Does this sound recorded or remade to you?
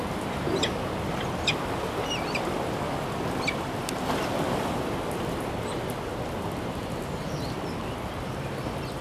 recorded